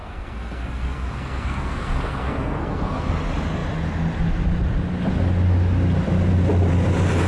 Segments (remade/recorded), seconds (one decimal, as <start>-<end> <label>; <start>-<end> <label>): 0.0-3.1 remade; 3.1-7.3 recorded